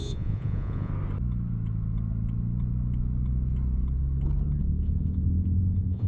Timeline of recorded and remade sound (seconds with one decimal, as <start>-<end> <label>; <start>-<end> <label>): 0.0-0.9 remade; 0.9-4.6 recorded; 4.6-6.1 remade